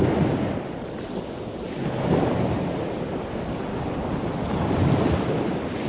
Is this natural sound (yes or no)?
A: yes